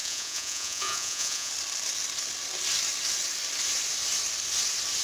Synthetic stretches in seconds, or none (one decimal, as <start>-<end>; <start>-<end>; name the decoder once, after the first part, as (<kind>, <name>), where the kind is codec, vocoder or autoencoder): 0.0-1.5 (vocoder, Vocos)